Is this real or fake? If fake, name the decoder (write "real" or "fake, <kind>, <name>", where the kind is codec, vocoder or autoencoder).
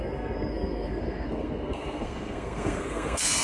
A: fake, codec, SNAC